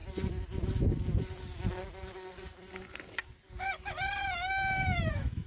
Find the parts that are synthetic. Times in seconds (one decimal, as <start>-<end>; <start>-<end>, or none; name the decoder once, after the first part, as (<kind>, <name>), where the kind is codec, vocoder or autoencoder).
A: 4.2-5.5 (autoencoder, DAC-VAE)

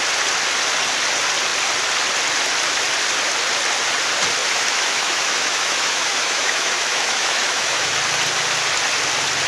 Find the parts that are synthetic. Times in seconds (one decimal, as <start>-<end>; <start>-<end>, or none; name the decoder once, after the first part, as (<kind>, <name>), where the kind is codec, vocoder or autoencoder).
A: 4.4-7.9 (autoencoder, DAC-VAE)